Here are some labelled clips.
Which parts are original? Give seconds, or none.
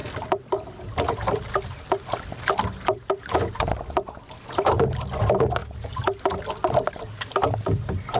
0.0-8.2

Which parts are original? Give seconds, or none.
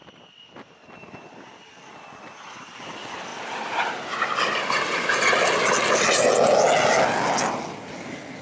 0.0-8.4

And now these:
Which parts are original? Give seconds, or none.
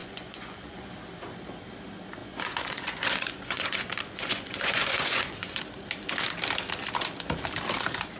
0.9-2.2; 5.6-8.2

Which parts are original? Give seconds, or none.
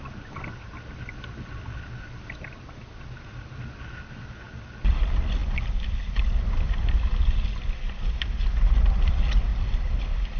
0.0-9.5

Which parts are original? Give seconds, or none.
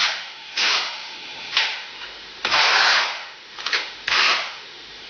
none